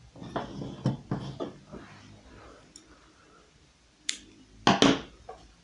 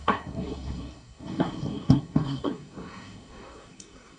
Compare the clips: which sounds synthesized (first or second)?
second